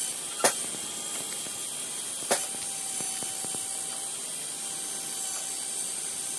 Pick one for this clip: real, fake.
real